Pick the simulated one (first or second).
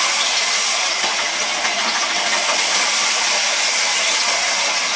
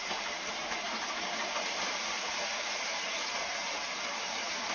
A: second